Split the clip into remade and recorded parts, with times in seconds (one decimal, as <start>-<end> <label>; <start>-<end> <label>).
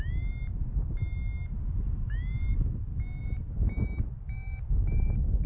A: 0.0-5.5 recorded